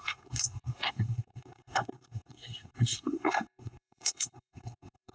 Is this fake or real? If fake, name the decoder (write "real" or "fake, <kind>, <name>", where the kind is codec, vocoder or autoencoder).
fake, codec, SNAC